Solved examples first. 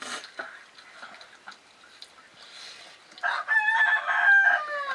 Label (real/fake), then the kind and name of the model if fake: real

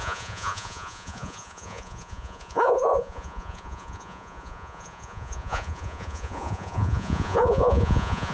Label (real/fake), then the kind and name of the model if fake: fake, vocoder, Vocos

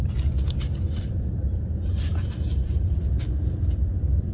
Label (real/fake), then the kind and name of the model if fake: real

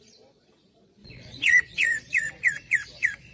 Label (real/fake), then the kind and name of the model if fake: fake, vocoder, Vocos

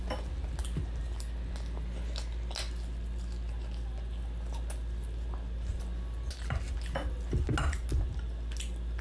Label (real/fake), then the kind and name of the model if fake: real